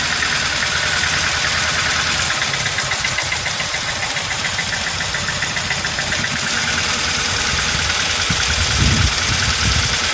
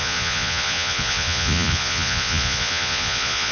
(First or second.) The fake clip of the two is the second